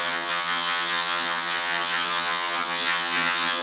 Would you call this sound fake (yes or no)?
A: yes